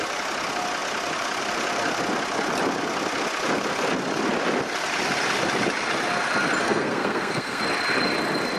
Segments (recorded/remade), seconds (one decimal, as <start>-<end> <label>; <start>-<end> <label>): 0.0-6.6 recorded; 6.6-7.6 remade; 7.6-8.6 recorded